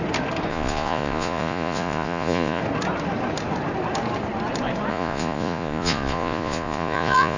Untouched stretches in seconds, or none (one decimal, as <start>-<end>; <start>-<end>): 0.0-0.5; 2.6-4.9